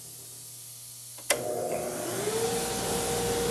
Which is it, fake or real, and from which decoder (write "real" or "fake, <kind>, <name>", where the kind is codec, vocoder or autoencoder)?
real